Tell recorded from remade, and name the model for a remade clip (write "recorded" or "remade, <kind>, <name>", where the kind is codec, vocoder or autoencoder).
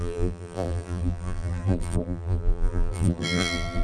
remade, vocoder, BigVGAN v2